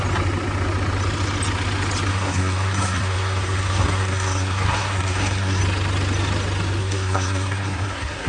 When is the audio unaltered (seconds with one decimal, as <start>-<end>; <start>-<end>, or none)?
0.0-2.1; 5.6-6.8